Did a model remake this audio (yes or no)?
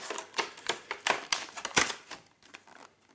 no